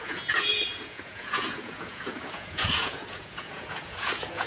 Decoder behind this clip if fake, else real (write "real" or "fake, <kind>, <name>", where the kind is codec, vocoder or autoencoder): fake, vocoder, Vocos